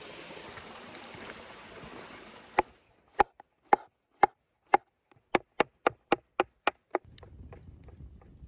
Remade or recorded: recorded